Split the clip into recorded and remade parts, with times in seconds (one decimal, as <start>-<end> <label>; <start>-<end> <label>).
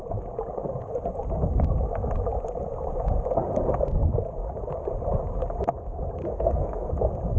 0.0-6.2 recorded; 6.2-6.9 remade; 6.9-7.4 recorded